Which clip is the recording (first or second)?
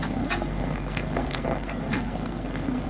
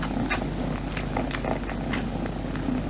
second